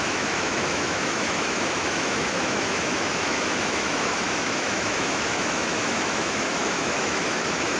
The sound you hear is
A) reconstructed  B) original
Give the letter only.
A